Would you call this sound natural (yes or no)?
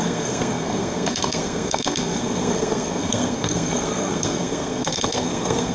no